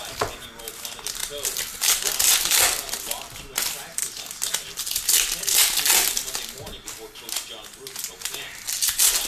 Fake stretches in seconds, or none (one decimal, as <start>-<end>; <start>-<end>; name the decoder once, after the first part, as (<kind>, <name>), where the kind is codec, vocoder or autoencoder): none